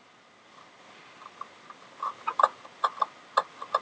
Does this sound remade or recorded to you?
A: recorded